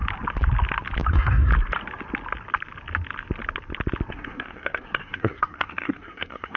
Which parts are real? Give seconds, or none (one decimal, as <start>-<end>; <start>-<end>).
0.0-1.1; 1.5-4.1